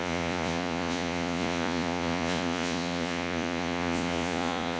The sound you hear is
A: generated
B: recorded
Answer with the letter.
A